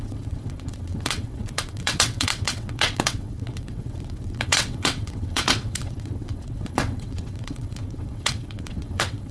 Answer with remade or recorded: remade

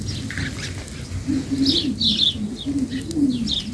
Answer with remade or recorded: recorded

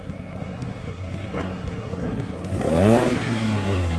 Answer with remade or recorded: remade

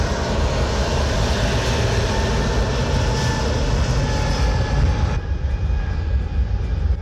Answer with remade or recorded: recorded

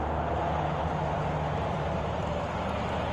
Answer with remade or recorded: recorded